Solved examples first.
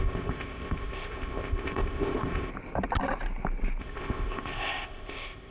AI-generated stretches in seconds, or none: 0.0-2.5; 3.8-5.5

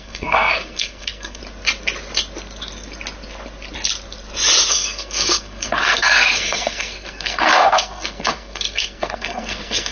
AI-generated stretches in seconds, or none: 0.0-1.4; 4.7-9.9

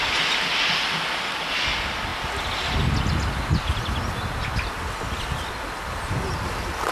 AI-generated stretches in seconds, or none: none

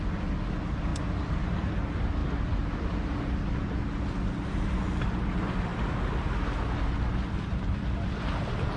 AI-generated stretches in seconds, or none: none